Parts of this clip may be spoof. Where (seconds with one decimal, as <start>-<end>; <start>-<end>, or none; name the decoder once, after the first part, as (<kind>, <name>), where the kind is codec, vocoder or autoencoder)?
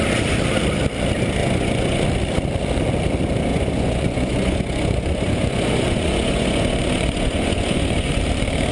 1.4-2.0 (vocoder, Vocos); 3.5-8.2